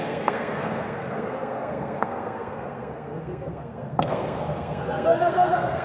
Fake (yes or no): yes